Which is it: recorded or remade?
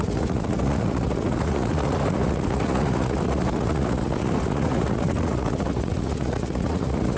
remade